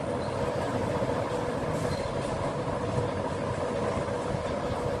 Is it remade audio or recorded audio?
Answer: recorded